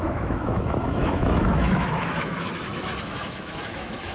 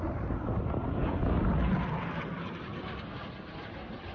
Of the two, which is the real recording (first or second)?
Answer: second